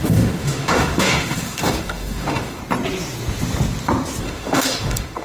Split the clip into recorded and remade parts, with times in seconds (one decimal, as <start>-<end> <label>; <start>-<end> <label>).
0.0-2.6 remade; 2.6-4.2 recorded; 4.2-5.2 remade